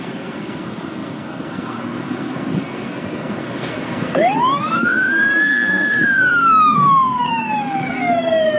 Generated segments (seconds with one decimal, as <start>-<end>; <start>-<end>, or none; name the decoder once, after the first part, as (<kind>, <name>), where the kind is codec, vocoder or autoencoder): 0.0-8.6 (codec, SNAC)